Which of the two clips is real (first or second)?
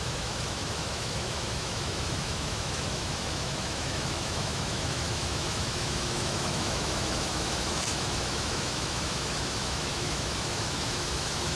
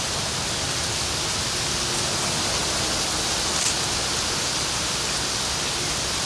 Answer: second